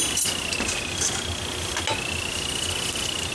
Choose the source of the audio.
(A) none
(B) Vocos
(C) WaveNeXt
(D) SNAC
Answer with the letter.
A